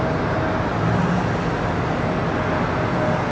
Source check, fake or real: real